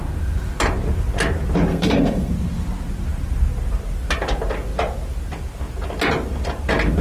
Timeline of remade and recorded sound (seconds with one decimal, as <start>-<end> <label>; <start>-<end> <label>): 0.0-1.7 recorded; 1.7-2.3 remade; 2.3-7.0 recorded

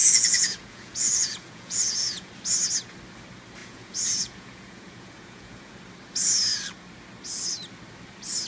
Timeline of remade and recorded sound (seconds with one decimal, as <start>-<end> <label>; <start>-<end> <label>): 0.0-2.3 remade; 2.3-3.6 recorded; 3.6-5.8 remade; 5.8-8.5 recorded

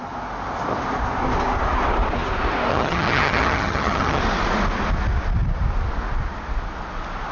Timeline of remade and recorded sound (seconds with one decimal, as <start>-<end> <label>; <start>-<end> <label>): 0.0-2.7 recorded; 2.7-4.2 remade; 4.2-7.3 recorded

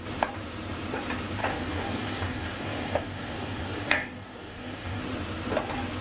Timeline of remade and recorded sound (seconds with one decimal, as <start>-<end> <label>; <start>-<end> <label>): 0.0-1.4 recorded; 1.4-5.0 remade; 5.0-6.0 recorded

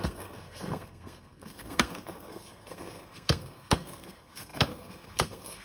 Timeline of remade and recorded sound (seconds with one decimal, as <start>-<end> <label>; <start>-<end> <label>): 0.0-5.6 remade

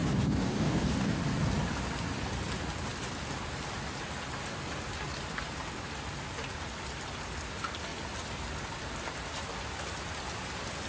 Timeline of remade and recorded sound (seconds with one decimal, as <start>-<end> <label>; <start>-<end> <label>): 0.0-1.2 remade; 1.2-10.9 recorded